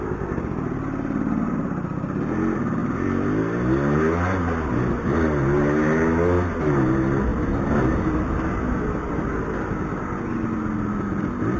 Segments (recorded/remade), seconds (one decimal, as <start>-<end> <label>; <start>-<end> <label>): 0.0-2.8 recorded; 2.8-3.4 remade; 3.4-11.6 recorded